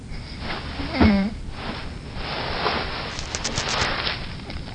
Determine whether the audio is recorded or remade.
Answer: recorded